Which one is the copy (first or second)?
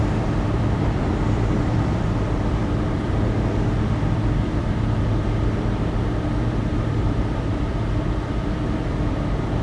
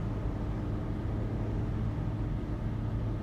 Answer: first